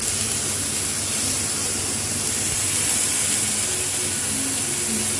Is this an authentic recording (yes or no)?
yes